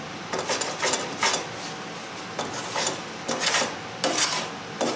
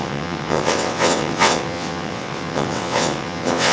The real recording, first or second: first